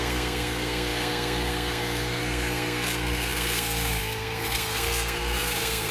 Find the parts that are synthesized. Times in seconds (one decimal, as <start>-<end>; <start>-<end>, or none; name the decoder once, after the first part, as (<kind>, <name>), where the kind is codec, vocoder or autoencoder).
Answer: 0.0-5.9 (codec, SNAC)